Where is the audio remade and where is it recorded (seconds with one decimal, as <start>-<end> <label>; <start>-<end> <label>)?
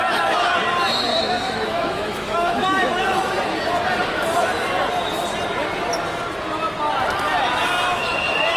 0.0-1.1 recorded; 1.1-3.0 remade; 3.0-8.6 recorded